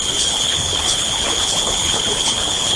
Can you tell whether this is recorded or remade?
remade